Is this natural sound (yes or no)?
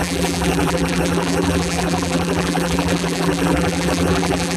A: no